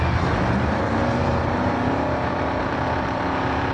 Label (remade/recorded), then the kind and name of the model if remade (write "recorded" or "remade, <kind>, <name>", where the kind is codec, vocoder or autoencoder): remade, vocoder, BigVGAN v2